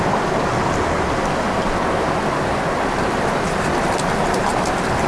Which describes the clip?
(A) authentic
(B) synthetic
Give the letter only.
A